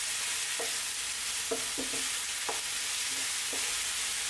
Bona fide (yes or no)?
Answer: yes